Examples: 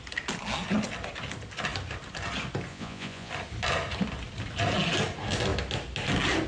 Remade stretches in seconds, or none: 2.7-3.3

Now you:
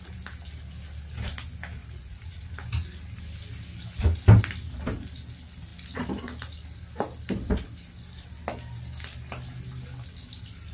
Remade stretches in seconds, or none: 1.8-2.4

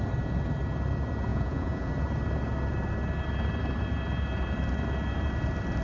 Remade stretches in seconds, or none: 1.3-1.9

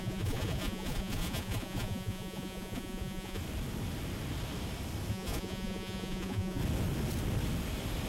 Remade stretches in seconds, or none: 0.0-3.4; 5.1-6.6

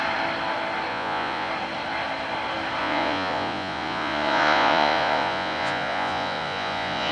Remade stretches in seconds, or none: 0.9-1.5; 2.8-7.1